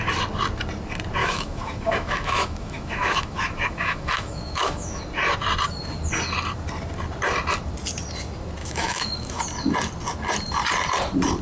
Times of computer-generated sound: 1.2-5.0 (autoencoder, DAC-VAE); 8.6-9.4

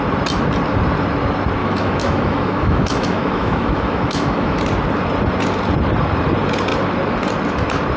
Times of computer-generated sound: 1.6-4.6 (autoencoder, DAC-VAE)

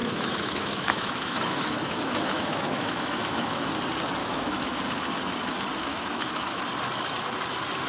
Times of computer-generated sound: 0.0-3.7 (autoencoder, DAC-VAE); 4.2-4.8; 5.9-6.6

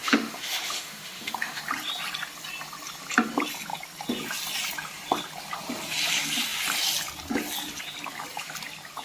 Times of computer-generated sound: 0.0-1.6 (autoencoder, DAC-VAE)